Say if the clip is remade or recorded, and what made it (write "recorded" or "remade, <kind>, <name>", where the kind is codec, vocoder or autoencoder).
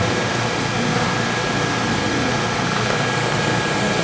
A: recorded